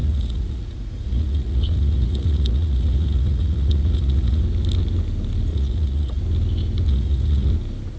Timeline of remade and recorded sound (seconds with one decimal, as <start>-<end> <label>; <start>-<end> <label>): 0.0-4.4 remade; 4.4-5.5 recorded; 5.5-6.2 remade; 6.2-6.9 recorded; 6.9-7.5 remade; 7.5-8.0 recorded